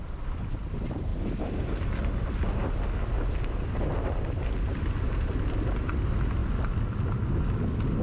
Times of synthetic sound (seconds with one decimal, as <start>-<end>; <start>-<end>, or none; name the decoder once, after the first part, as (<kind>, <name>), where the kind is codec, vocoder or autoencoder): 0.0-1.1 (vocoder, BigVGAN v2); 1.6-2.6; 3.3-6.4; 6.9-8.0